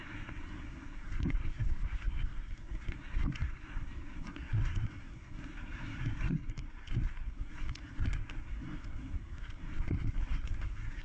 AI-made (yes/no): yes